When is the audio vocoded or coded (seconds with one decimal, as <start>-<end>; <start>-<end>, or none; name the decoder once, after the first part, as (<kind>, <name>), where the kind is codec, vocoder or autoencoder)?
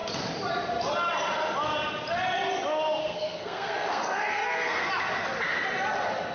3.0-4.9 (codec, SNAC)